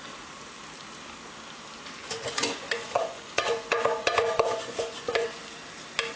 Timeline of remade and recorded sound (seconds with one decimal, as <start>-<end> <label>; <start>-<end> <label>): 0.0-2.0 recorded; 2.0-5.4 remade; 5.4-6.2 recorded